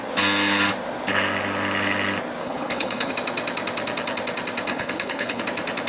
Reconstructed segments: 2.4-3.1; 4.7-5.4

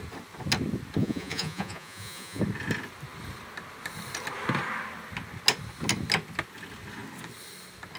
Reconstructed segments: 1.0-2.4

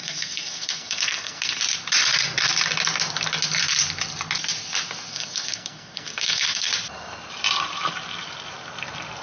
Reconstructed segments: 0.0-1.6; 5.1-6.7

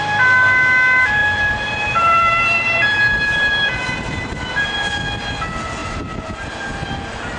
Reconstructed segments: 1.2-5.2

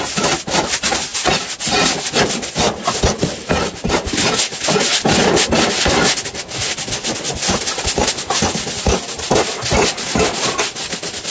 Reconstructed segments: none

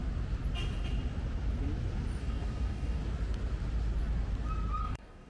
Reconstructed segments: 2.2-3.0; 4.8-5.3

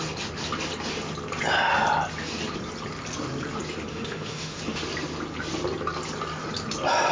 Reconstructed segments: 3.9-4.6